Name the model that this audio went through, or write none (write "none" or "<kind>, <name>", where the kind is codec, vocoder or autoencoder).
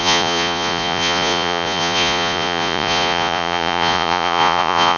vocoder, Vocos